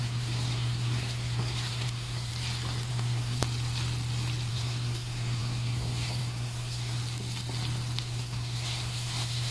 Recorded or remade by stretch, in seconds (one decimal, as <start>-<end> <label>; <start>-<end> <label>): 0.0-2.3 remade; 2.3-2.9 recorded; 2.9-3.4 remade; 3.4-4.5 recorded; 4.5-7.0 remade; 7.0-8.0 recorded; 8.0-9.5 remade